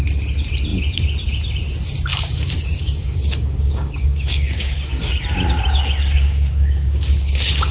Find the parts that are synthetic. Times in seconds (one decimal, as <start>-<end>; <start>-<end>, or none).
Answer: 2.1-5.2; 6.0-7.7

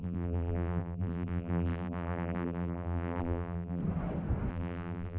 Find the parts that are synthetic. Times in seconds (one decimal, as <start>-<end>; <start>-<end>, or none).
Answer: 0.0-3.8; 4.5-5.2

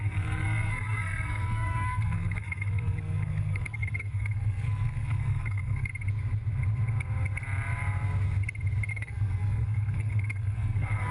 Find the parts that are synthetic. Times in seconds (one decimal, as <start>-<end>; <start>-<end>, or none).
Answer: 0.0-5.9; 8.9-11.1

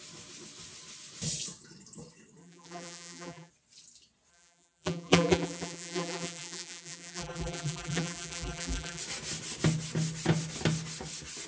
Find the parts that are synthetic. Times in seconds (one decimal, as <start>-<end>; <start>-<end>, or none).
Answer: 2.4-3.5; 4.3-9.0

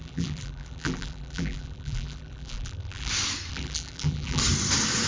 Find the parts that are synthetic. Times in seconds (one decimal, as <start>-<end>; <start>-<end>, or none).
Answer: 0.0-3.1; 3.5-4.4

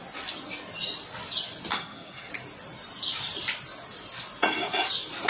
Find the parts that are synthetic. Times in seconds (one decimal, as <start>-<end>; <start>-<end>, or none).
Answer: 1.7-2.3

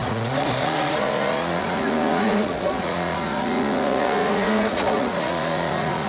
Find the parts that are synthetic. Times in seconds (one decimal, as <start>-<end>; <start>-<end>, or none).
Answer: 0.0-6.1